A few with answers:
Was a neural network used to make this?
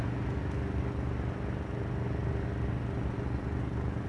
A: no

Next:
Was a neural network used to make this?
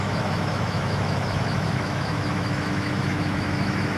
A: yes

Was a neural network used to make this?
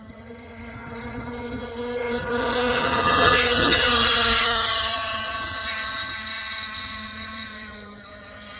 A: yes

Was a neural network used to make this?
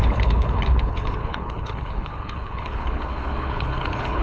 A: yes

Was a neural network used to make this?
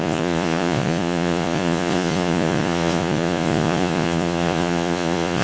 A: yes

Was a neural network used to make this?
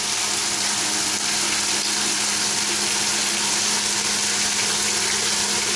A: no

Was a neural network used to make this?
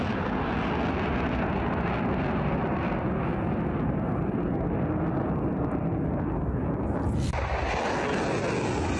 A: no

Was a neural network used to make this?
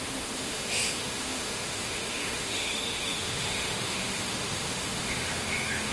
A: yes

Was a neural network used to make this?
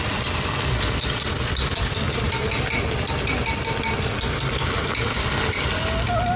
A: no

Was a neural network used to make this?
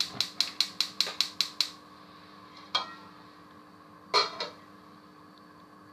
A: no